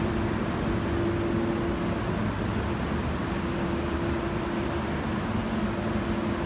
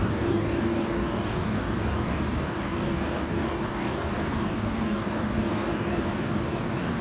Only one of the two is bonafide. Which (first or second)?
first